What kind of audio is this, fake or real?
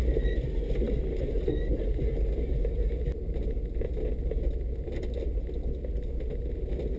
real